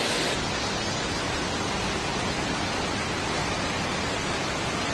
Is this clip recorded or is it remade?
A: recorded